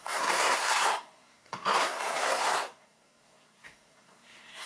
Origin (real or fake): fake